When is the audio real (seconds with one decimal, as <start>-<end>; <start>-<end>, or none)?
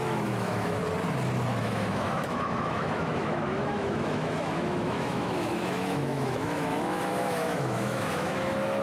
0.8-1.6